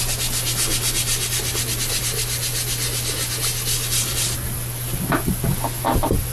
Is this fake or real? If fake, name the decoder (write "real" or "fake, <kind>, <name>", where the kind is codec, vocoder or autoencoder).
real